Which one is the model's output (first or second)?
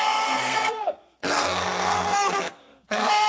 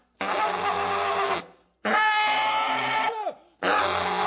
first